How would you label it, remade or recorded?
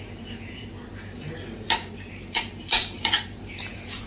remade